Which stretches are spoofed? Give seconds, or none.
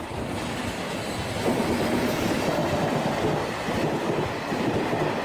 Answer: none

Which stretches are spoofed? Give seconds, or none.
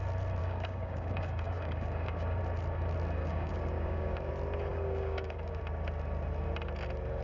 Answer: 0.4-2.4; 3.2-4.3; 4.7-5.6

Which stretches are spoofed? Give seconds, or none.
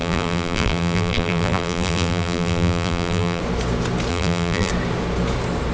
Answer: 0.0-3.4; 4.1-4.7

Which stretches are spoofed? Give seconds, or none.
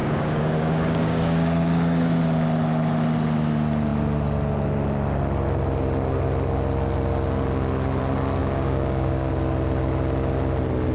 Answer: 0.0-2.2; 8.4-9.3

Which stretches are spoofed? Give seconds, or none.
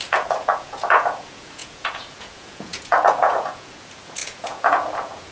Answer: 0.0-5.3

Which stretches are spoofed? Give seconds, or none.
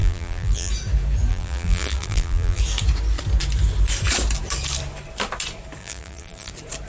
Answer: 0.0-0.7; 1.3-2.6; 5.8-6.5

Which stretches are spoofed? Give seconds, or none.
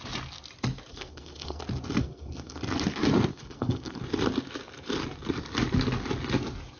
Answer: 0.9-1.6; 2.0-2.6; 3.3-4.0